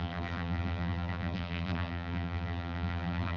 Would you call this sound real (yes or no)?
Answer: no